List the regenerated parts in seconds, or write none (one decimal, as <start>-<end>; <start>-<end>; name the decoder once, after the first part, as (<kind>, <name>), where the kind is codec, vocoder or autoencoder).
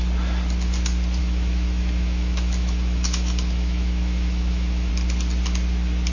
1.2-4.9 (autoencoder, DAC-VAE)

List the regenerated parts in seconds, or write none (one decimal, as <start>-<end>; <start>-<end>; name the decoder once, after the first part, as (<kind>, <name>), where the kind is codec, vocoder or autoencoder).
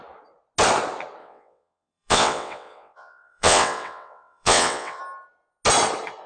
1.2-5.0 (vocoder, WaveNeXt)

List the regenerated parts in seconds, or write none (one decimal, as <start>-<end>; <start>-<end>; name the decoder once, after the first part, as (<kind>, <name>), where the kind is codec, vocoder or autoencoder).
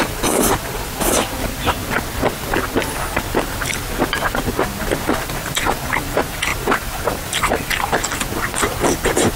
0.0-1.8 (vocoder, BigVGAN v2); 4.8-9.3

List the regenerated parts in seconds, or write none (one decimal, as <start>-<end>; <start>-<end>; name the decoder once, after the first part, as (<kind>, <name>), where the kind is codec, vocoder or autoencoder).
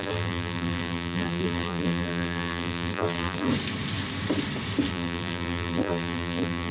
0.0-3.5 (vocoder, BigVGAN v2); 4.9-6.7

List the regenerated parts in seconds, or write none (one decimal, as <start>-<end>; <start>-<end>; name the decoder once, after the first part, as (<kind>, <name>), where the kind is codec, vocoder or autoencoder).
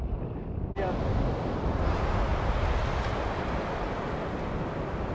none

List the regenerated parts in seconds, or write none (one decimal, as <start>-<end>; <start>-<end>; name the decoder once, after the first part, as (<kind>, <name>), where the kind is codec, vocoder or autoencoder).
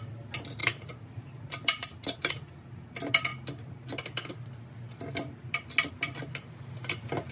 0.6-2.3 (vocoder, BigVGAN v2)